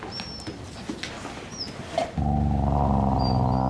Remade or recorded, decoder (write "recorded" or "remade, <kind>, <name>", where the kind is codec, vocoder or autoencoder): recorded